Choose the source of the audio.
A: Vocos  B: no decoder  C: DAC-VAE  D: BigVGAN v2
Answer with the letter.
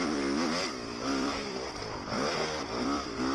D